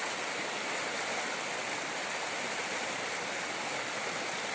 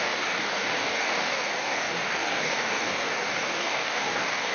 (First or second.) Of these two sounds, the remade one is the second